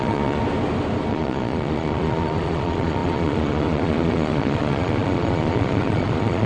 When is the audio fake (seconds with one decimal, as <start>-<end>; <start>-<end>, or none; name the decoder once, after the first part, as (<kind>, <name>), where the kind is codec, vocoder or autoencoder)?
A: 0.0-0.4 (vocoder, Vocos); 1.1-6.5